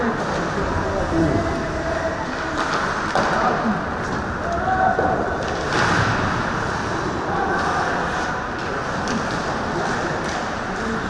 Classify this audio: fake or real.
real